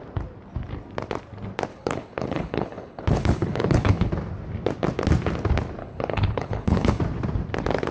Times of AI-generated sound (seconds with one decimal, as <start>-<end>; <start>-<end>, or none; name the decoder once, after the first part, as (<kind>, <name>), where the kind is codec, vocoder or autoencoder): 1.7-4.1 (codec, HILCodec); 5.8-7.0